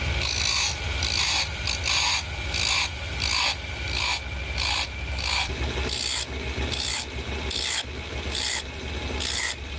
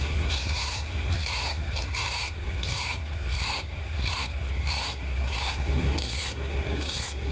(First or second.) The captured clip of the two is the first